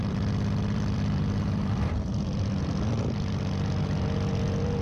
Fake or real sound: fake